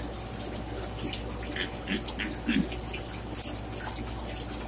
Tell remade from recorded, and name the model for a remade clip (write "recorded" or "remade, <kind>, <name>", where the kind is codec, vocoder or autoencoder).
recorded